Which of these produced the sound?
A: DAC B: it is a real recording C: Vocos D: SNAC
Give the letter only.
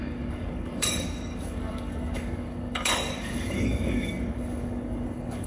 A